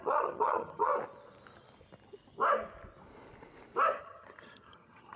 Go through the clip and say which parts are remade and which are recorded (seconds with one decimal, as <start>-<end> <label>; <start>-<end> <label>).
0.0-0.9 remade; 0.9-4.0 recorded; 4.0-5.2 remade